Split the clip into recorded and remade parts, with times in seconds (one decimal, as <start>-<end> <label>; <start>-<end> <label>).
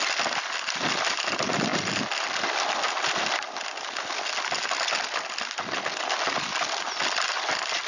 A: 0.0-7.9 recorded